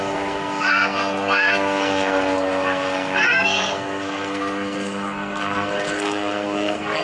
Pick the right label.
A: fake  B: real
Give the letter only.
A